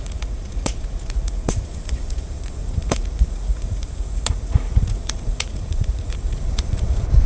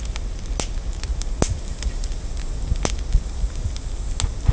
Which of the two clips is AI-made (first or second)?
first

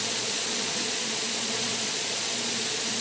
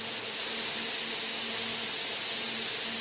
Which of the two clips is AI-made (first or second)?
first